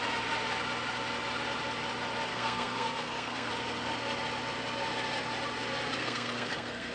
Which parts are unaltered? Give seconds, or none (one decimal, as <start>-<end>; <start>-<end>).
0.0-2.3; 3.5-6.0